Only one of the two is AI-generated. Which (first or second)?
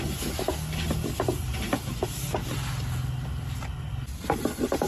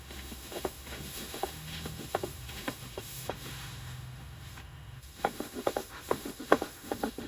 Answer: second